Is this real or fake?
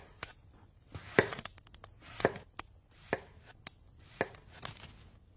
real